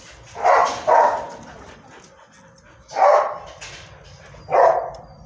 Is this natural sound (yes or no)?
yes